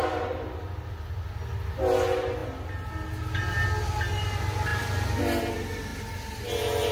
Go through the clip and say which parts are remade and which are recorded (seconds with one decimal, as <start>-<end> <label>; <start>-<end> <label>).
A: 0.0-6.9 recorded